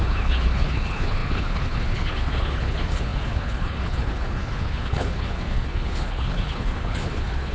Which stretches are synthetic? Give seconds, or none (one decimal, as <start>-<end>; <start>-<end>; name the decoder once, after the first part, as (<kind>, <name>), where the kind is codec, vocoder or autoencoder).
0.0-7.5 (codec, HILCodec)